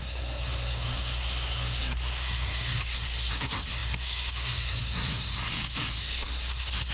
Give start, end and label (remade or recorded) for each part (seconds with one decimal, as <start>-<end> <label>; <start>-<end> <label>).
0.0-5.3 remade; 5.3-6.0 recorded; 6.0-6.9 remade